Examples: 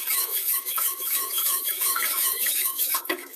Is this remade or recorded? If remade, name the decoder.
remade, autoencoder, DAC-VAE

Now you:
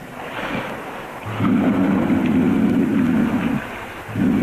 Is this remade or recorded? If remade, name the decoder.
recorded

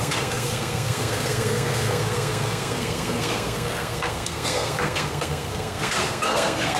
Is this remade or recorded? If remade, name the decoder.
remade, codec, SNAC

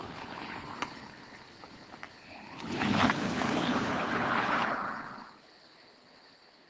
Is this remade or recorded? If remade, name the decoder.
remade, codec, HILCodec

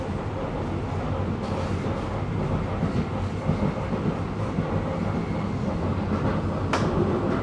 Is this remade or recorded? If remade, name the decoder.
recorded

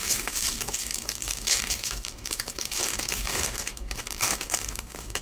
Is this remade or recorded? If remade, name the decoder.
remade, codec, DAC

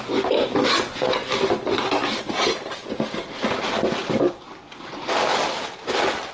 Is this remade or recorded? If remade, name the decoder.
recorded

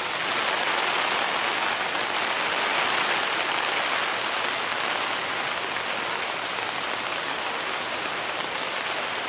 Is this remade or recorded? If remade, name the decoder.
recorded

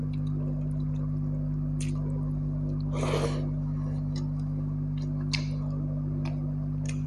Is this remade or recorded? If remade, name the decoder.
recorded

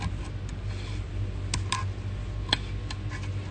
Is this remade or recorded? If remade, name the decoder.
recorded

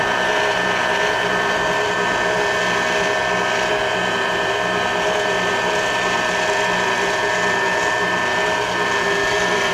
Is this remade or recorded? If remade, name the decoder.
recorded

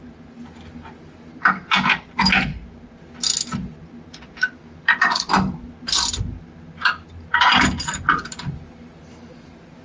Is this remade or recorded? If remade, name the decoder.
recorded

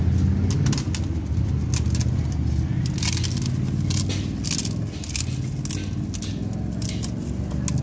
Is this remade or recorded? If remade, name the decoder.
recorded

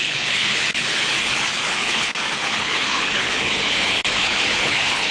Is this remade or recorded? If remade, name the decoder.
remade, codec, HILCodec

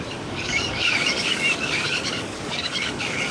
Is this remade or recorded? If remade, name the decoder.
remade, codec, DAC